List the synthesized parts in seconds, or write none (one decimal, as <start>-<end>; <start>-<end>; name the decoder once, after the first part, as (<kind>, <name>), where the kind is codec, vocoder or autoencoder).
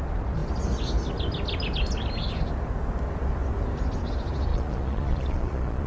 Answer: 4.5-5.9 (vocoder, Vocos)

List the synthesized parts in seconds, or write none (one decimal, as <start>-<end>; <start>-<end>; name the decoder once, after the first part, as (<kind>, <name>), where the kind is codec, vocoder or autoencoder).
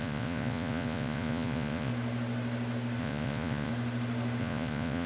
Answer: 0.0-1.9 (vocoder, Vocos); 3.0-3.7; 4.4-5.1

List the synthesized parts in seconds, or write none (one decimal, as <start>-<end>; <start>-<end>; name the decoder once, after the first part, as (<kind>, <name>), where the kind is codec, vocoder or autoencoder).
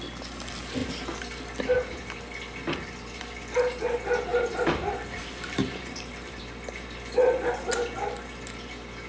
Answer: 4.3-6.4 (vocoder, BigVGAN v2)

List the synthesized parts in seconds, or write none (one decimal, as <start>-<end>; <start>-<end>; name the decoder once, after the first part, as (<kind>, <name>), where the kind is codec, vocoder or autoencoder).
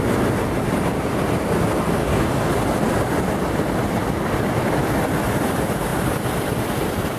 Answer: 2.0-2.5 (codec, DAC)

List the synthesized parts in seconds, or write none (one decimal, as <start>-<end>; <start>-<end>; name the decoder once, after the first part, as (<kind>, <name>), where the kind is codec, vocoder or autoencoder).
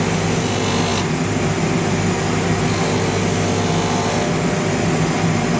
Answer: none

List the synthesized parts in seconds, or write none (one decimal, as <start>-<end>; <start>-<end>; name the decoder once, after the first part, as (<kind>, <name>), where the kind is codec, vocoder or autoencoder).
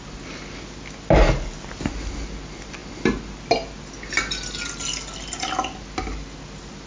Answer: none